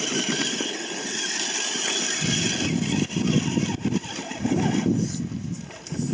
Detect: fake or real real